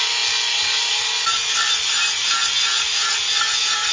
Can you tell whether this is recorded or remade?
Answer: recorded